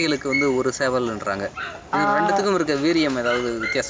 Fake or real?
real